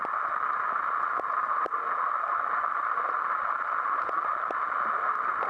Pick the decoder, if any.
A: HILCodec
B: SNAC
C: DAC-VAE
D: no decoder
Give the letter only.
D